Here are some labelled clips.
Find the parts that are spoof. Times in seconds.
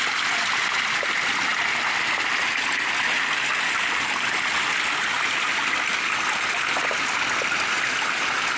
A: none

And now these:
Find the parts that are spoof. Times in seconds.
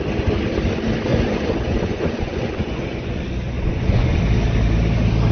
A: 1.1-4.2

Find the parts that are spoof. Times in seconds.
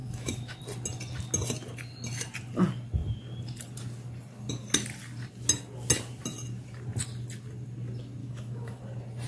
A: 0.0-0.6; 8.2-8.8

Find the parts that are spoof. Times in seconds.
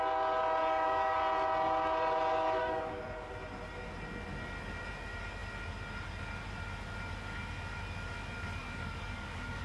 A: 0.6-1.2; 2.6-3.3; 8.6-9.6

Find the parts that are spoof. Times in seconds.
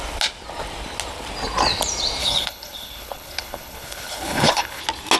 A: 2.2-4.8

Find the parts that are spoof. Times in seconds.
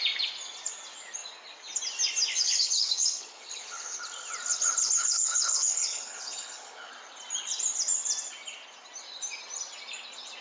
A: 2.3-4.0; 4.5-6.9